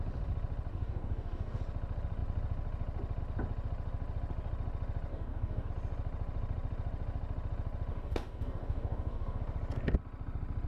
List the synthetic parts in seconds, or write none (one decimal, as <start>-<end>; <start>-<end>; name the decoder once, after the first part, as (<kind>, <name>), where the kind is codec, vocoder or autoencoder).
0.7-1.6 (codec, DAC); 5.1-5.7; 7.9-9.4